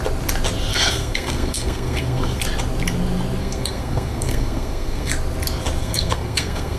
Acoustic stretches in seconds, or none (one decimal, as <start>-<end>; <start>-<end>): 0.0-0.7; 2.4-3.4; 5.1-5.8